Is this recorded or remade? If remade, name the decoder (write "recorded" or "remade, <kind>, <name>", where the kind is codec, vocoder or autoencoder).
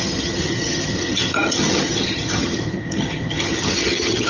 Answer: remade, vocoder, HiFi-GAN